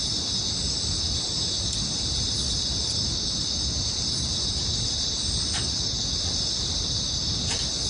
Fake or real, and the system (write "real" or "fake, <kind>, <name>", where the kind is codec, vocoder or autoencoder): real